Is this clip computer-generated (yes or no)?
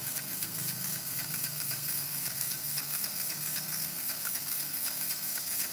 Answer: yes